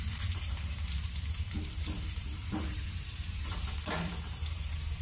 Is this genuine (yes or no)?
no